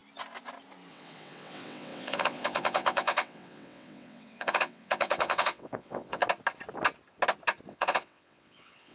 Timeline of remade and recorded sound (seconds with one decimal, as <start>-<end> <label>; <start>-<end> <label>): 0.0-0.9 recorded; 0.9-6.2 remade; 6.2-7.7 recorded; 7.7-8.9 remade